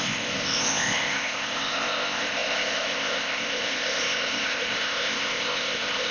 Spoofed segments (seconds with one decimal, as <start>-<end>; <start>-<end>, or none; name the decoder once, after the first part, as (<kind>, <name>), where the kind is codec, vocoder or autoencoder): 0.0-6.1 (codec, ZipCodec)